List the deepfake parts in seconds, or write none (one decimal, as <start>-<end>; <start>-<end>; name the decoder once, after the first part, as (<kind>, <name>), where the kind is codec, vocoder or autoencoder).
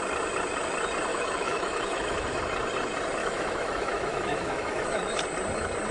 1.1-2.4 (autoencoder, DAC-VAE); 3.2-5.1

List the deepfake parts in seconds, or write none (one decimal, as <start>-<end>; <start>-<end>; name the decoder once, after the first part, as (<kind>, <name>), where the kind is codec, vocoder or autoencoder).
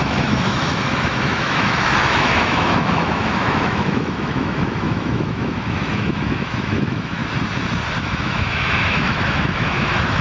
0.0-7.2 (autoencoder, DAC-VAE); 8.0-10.2